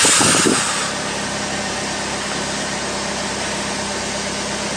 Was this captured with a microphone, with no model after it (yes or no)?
yes